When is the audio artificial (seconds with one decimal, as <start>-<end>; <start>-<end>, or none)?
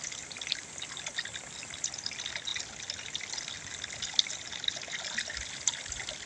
none